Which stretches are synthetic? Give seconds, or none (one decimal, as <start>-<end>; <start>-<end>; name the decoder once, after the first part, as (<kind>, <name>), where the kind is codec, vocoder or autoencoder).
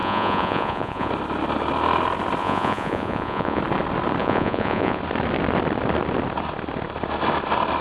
0.0-1.1 (vocoder, Vocos); 2.4-3.6; 4.2-5.0